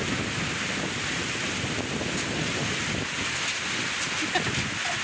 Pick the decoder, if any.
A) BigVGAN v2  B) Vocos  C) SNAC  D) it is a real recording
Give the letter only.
D